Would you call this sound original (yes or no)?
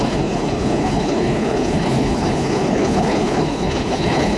no